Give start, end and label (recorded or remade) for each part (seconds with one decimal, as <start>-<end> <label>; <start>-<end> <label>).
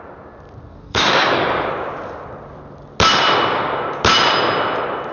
0.0-0.7 recorded; 0.7-1.7 remade; 1.7-5.1 recorded